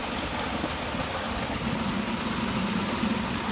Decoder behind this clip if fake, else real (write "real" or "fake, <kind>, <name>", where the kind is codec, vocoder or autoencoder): real